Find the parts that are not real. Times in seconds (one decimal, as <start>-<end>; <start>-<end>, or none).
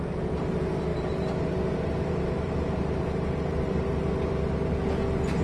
0.9-4.1